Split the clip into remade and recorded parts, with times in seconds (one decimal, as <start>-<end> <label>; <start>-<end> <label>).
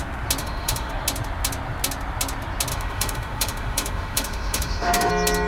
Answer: 0.0-0.4 recorded; 0.4-0.9 remade; 0.9-2.7 recorded; 2.7-5.1 remade; 5.1-5.5 recorded